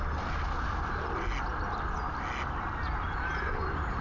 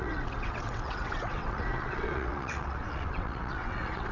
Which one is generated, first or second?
second